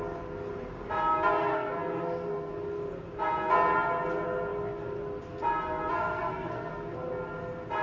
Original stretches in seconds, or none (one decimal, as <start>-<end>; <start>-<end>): 0.0-1.4; 2.5-6.0; 6.7-7.8